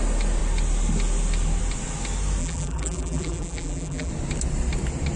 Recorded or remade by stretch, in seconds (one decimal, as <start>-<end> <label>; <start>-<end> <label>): 0.0-2.4 recorded; 2.4-4.1 remade; 4.1-5.2 recorded